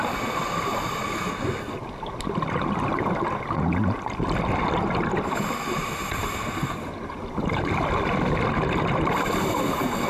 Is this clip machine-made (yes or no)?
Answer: no